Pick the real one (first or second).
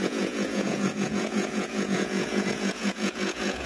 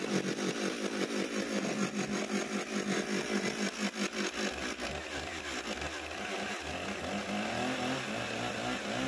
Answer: second